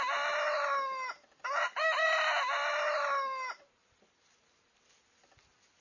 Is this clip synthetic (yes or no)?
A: no